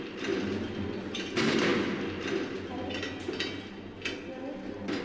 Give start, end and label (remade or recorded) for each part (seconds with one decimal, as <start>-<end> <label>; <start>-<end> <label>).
0.0-1.7 remade; 1.7-5.0 recorded